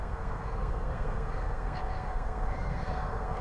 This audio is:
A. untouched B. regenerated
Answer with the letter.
B